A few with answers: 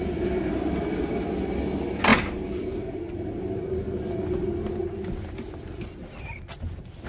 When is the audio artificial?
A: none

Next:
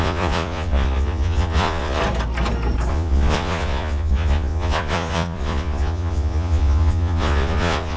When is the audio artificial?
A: 0.0-2.0 (vocoder, Vocos); 2.9-8.0

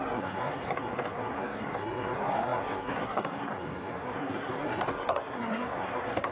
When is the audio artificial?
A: 0.0-6.3 (codec, SNAC)

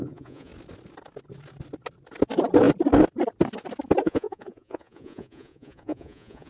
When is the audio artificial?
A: 0.0-0.5 (vocoder, Vocos); 4.0-6.5

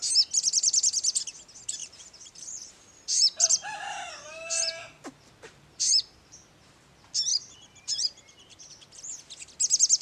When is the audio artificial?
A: 1.8-2.7 (vocoder, BigVGAN v2); 3.1-6.4; 7.3-8.7